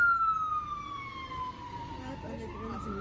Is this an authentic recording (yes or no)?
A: yes